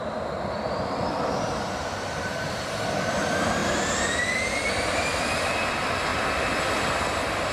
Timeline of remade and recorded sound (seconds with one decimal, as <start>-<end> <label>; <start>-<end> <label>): 0.0-3.6 remade; 3.6-4.8 recorded; 4.8-6.1 remade; 6.1-6.9 recorded; 6.9-7.5 remade